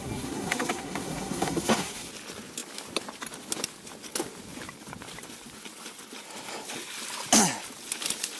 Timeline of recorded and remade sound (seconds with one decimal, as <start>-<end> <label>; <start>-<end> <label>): 0.0-2.1 remade; 2.1-8.4 recorded